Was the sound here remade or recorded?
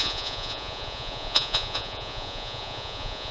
remade